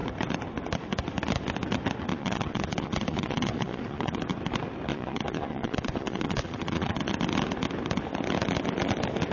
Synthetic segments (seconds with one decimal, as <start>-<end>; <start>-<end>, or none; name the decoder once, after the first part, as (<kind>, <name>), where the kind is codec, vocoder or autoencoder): 2.1-4.2 (vocoder, Vocos); 4.9-7.1